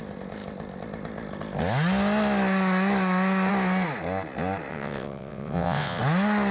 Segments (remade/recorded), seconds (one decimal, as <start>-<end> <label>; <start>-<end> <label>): 0.0-4.7 recorded; 4.7-6.0 remade; 6.0-6.5 recorded

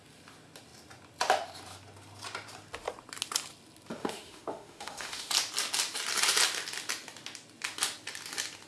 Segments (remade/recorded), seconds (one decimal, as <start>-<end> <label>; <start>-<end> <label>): 0.0-4.0 recorded; 4.0-5.3 remade; 5.3-8.7 recorded

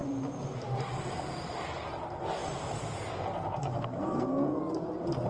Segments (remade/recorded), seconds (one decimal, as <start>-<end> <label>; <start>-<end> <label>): 0.0-3.6 recorded; 3.6-4.6 remade; 4.6-5.3 recorded

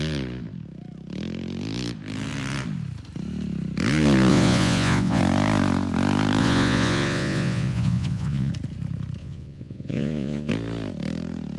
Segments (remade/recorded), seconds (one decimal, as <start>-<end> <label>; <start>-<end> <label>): 0.0-4.3 recorded; 4.3-5.2 remade; 5.2-6.4 recorded; 6.4-8.5 remade; 8.5-9.2 recorded; 9.2-10.5 remade; 10.5-11.6 recorded

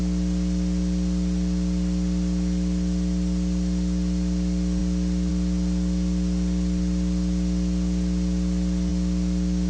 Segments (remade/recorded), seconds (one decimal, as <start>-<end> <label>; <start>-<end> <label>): 0.0-9.7 recorded

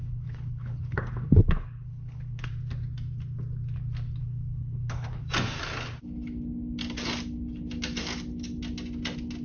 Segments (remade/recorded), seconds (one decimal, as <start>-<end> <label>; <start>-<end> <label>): 0.0-2.5 remade; 2.5-4.2 recorded; 4.2-5.2 remade; 5.2-9.4 recorded